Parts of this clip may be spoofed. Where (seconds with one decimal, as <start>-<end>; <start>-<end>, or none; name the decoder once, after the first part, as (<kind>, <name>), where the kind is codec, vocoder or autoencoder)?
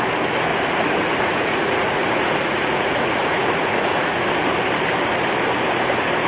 0.5-4.3 (vocoder, Vocos)